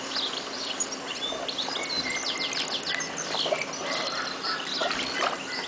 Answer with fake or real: real